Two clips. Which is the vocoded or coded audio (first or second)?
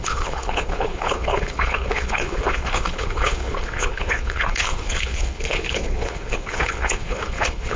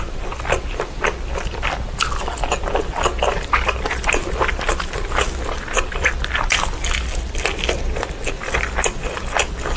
first